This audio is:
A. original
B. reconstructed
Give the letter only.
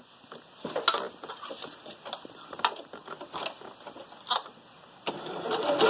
A